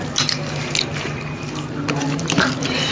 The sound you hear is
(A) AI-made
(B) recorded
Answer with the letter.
B